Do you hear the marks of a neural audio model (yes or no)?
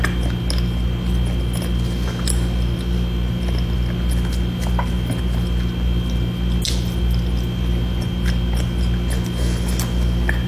no